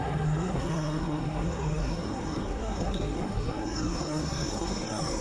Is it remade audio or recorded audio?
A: remade